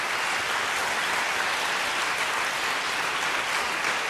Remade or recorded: recorded